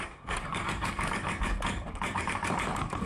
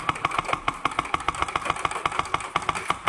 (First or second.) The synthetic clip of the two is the first